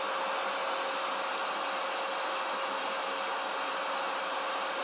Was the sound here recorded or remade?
recorded